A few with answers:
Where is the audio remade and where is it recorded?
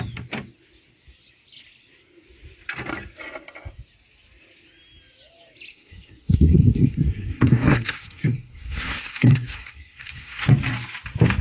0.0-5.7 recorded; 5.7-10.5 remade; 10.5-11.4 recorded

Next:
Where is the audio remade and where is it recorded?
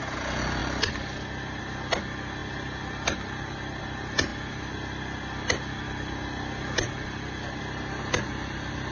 0.0-8.9 recorded